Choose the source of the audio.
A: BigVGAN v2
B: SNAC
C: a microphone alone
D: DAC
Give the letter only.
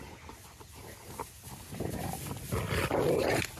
C